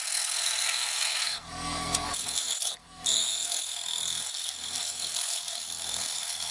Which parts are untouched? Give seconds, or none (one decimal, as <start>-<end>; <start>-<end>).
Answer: none